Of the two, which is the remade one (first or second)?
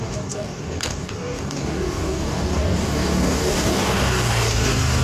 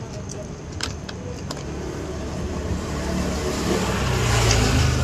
first